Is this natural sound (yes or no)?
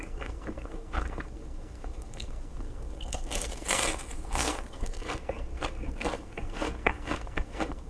no